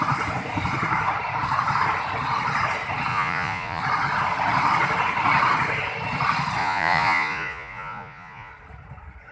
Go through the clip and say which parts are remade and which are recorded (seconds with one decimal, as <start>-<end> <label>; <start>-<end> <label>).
0.0-3.1 recorded; 3.1-3.8 remade; 3.8-6.6 recorded; 6.6-8.5 remade; 8.5-9.3 recorded